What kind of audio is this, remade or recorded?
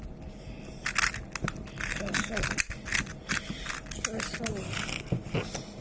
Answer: recorded